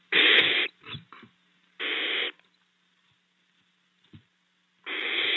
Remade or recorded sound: recorded